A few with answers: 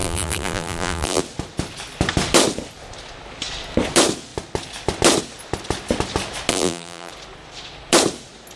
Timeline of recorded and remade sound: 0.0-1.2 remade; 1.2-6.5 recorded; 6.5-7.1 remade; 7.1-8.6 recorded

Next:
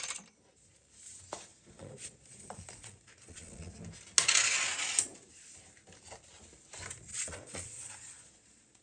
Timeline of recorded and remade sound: 0.0-1.5 recorded; 1.5-3.7 remade; 3.7-7.1 recorded; 7.1-8.8 remade

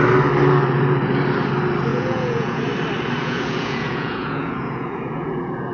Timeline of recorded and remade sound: 0.0-1.9 recorded; 1.9-2.6 remade; 2.6-3.2 recorded; 3.2-5.7 remade

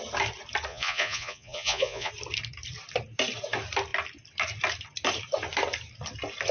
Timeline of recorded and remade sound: 0.0-0.7 recorded; 0.7-2.1 remade; 2.1-6.5 recorded

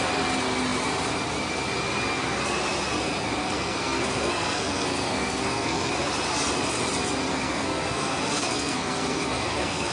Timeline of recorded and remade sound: 0.0-3.4 recorded; 3.4-5.9 remade; 5.9-7.3 recorded; 7.3-9.9 remade

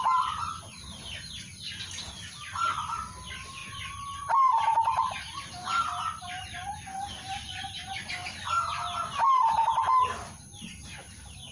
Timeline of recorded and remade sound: 0.0-11.5 recorded

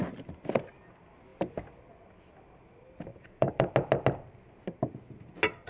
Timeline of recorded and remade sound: 0.0-3.1 recorded; 3.1-3.7 remade; 3.7-5.7 recorded